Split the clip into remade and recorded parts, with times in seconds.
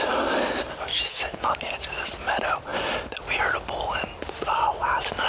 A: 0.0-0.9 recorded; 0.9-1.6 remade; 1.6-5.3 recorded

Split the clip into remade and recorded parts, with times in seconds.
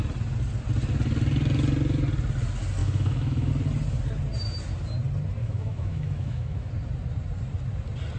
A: 0.0-2.8 recorded; 2.8-3.5 remade; 3.5-5.4 recorded; 5.4-6.7 remade; 6.7-8.2 recorded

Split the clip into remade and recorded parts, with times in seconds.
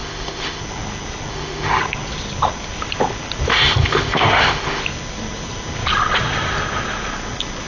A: 0.0-0.6 remade; 0.6-1.3 recorded; 1.3-1.8 remade; 1.8-3.5 recorded; 3.5-4.8 remade; 4.8-7.7 recorded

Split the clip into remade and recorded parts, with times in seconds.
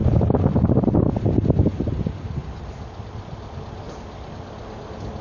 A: 0.0-5.2 recorded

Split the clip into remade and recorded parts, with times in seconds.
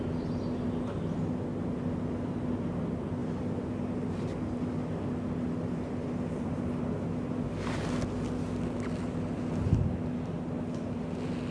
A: 0.0-11.5 recorded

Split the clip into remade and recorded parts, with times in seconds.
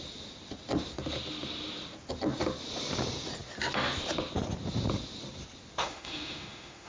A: 0.0-5.8 recorded; 5.8-6.9 remade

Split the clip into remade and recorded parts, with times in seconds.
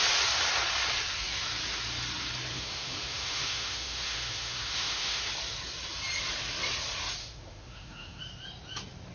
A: 0.0-2.5 recorded; 2.5-5.3 remade; 5.3-7.2 recorded; 7.2-8.2 remade; 8.2-9.1 recorded